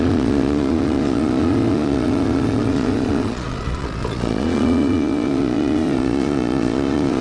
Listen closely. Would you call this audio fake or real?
fake